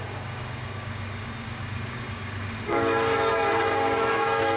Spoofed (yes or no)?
yes